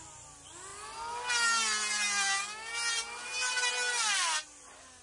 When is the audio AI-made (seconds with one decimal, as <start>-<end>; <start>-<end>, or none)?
none